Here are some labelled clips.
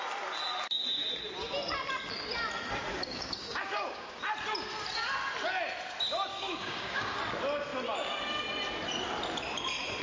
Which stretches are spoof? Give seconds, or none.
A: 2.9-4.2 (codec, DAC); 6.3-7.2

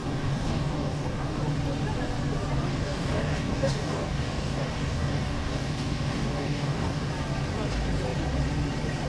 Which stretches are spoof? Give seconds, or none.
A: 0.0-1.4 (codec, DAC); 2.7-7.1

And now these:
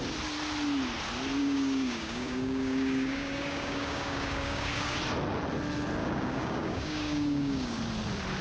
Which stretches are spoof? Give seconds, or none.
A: 1.4-5.0 (codec, DAC); 6.0-7.8

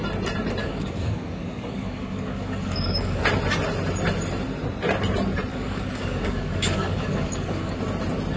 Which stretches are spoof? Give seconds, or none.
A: 0.6-3.2 (codec, DAC); 5.5-7.8